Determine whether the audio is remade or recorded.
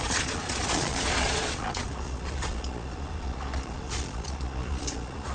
remade